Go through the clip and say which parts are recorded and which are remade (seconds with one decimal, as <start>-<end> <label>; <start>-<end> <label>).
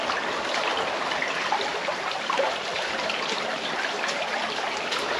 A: 0.0-1.7 recorded; 1.7-4.8 remade; 4.8-5.2 recorded